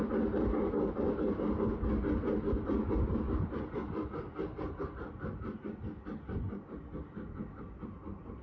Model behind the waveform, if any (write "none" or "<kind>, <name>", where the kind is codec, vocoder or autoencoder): none